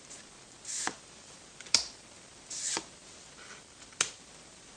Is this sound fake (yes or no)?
no